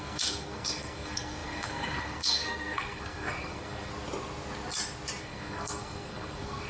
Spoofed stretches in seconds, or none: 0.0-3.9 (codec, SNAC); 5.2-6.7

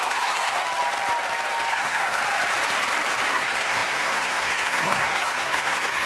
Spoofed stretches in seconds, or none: 0.0-0.6 (codec, SNAC); 1.7-2.2; 3.3-6.1

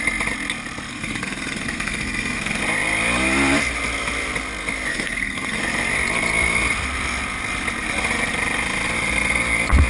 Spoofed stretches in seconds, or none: 0.9-2.6 (codec, SNAC); 4.9-5.6

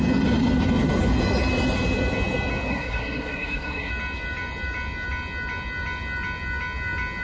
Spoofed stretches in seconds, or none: 2.7-3.9 (codec, SNAC)